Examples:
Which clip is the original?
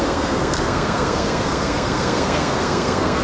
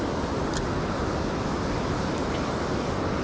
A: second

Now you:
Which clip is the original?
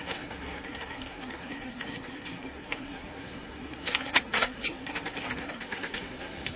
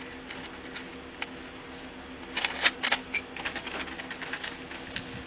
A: second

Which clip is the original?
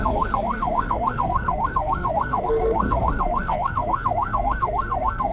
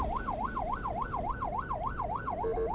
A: second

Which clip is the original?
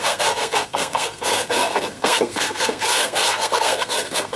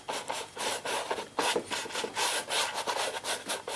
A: second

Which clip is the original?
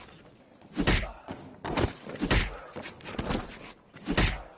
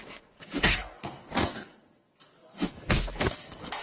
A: first